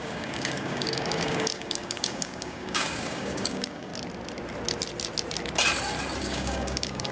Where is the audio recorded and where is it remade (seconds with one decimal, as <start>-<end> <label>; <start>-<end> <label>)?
0.0-3.9 remade; 3.9-6.2 recorded; 6.2-7.1 remade